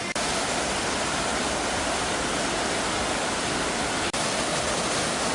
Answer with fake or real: real